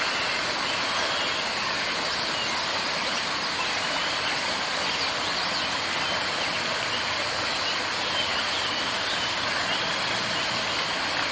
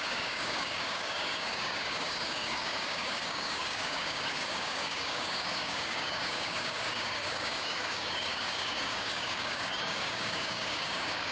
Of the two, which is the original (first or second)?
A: first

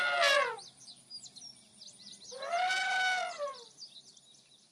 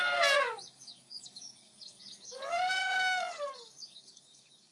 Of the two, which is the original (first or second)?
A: first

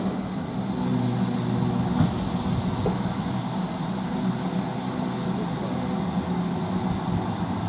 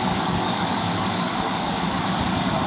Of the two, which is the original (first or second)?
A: first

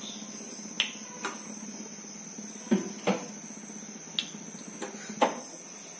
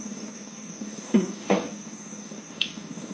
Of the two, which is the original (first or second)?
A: first